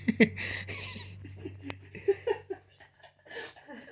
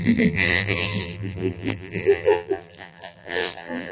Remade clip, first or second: second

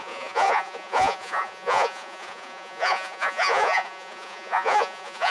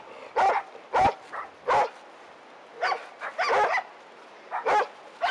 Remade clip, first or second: first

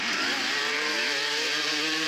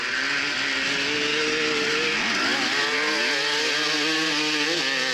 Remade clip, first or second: first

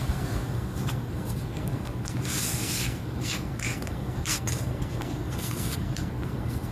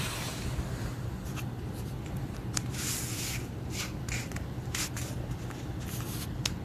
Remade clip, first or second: first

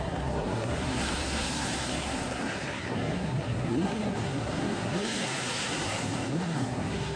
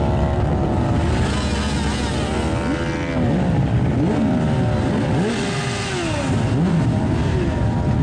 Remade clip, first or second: first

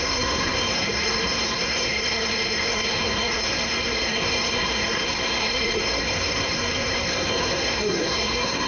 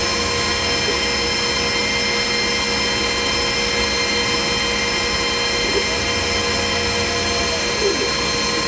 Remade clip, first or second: first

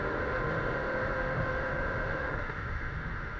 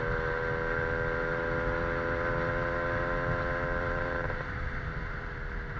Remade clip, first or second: first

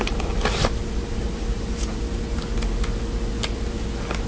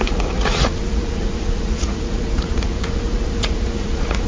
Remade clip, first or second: second